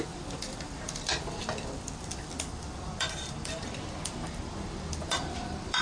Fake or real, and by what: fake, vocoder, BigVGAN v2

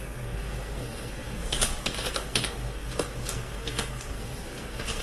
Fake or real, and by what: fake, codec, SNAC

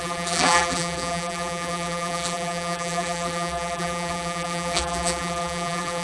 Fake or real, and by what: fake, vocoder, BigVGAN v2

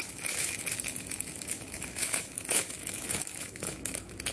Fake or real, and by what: fake, autoencoder, DAC-VAE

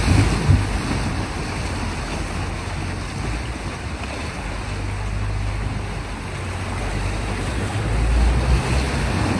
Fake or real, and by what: real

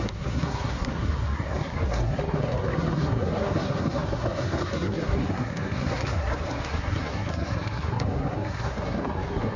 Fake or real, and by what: fake, codec, SNAC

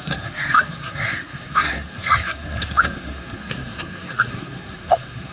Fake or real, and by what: fake, codec, SNAC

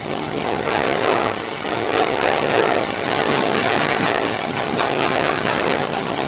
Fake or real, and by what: fake, vocoder, HiFi-GAN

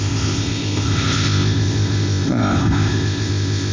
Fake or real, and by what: fake, codec, ZipCodec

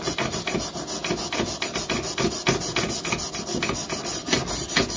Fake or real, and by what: real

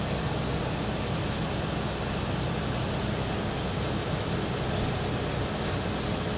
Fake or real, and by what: real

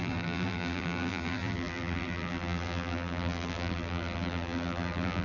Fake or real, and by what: fake, vocoder, BigVGAN v2